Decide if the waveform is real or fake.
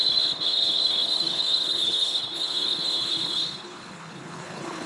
fake